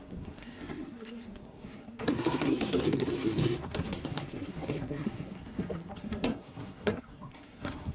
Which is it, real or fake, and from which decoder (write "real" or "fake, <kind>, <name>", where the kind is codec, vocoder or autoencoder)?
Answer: fake, codec, SNAC